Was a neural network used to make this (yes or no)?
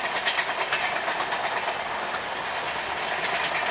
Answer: no